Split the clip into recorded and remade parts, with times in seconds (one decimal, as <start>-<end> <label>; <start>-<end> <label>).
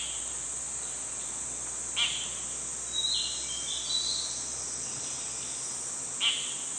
0.0-6.8 recorded